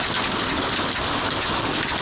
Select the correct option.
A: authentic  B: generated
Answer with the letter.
A